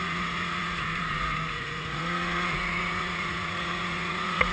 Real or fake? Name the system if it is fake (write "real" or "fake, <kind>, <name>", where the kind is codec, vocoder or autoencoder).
fake, vocoder, Vocos